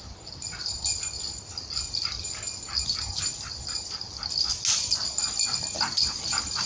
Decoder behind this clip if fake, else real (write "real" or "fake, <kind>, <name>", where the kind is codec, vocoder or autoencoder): real